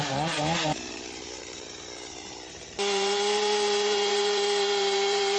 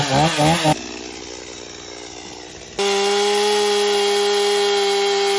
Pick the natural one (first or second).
second